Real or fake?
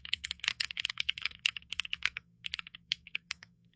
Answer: fake